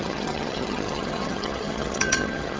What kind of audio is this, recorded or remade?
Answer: remade